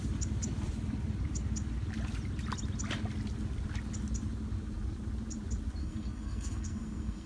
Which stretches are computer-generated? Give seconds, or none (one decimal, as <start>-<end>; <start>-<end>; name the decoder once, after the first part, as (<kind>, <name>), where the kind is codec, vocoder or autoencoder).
5.8-7.3 (codec, SNAC)